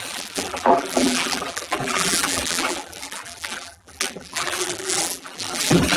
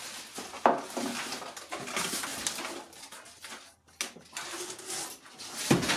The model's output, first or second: first